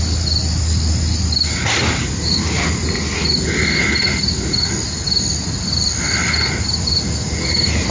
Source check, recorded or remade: recorded